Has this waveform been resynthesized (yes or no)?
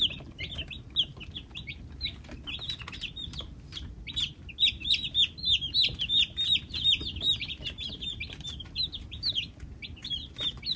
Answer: no